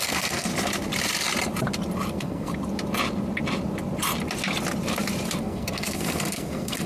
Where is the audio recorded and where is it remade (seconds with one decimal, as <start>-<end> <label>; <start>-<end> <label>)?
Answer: 0.0-0.5 remade; 0.5-2.1 recorded; 2.1-2.5 remade; 2.5-5.4 recorded; 5.4-6.9 remade